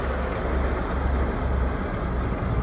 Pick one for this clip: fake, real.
real